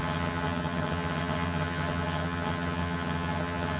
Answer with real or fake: fake